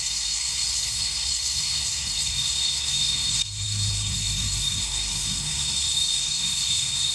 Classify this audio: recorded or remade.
remade